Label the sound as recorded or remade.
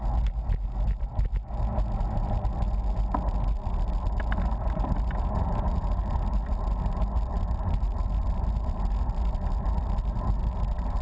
recorded